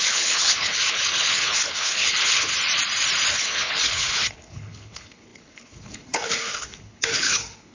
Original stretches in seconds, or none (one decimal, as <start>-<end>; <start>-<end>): 2.5-3.3